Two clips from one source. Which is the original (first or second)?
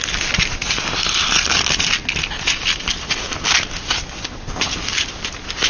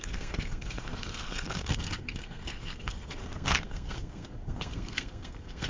first